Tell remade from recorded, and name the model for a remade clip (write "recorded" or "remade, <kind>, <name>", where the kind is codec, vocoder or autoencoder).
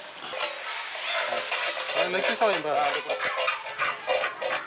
recorded